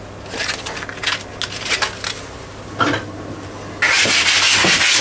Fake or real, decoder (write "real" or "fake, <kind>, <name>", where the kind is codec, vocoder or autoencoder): real